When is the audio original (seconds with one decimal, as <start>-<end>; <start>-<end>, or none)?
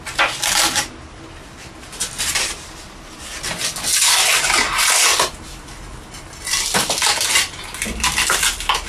0.0-8.9